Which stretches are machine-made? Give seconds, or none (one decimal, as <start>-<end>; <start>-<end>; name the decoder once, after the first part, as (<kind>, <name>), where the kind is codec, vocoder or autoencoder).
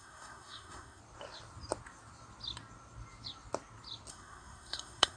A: 0.0-1.0 (codec, SNAC); 4.1-5.2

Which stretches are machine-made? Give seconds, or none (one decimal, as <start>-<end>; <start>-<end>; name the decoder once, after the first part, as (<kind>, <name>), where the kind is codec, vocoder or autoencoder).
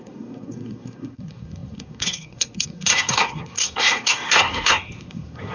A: 0.0-5.5 (codec, SNAC)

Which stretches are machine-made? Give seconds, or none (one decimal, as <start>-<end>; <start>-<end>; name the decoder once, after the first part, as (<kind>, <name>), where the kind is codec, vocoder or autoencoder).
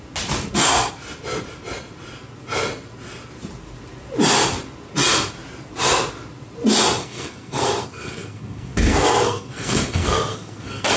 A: 7.0-11.0 (codec, SNAC)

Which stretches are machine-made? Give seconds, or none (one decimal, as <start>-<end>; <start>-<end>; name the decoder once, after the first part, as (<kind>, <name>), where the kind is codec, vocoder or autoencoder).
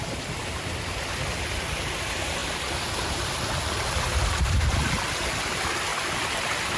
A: none